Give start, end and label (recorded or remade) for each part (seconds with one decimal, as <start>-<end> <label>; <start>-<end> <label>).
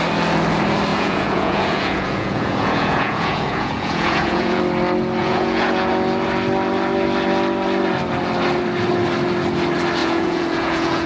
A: 0.0-0.9 recorded; 0.9-4.6 remade; 4.6-5.2 recorded; 5.2-5.9 remade; 5.9-10.0 recorded; 10.0-11.1 remade